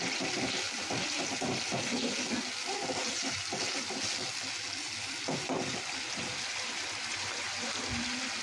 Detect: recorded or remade recorded